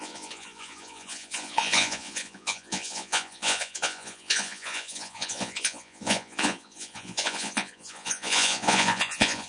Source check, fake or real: fake